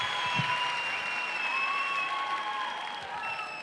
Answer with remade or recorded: recorded